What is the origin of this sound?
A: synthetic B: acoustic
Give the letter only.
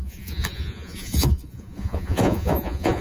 A